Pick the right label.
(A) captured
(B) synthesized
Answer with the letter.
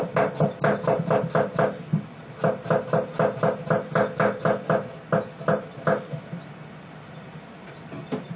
A